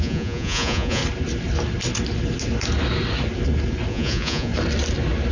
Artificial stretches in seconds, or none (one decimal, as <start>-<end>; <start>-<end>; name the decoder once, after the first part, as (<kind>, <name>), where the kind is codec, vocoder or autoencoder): 0.0-1.0 (vocoder, Vocos); 3.9-4.5